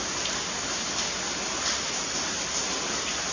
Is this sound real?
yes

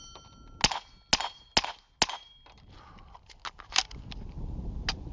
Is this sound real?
yes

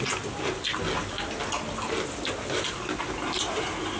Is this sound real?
yes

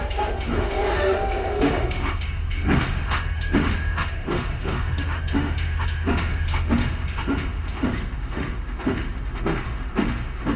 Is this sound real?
no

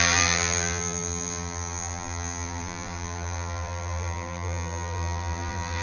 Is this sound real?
no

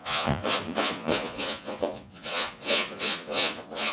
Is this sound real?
no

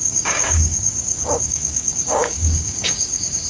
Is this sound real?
no